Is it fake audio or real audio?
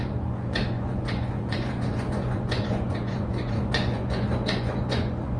fake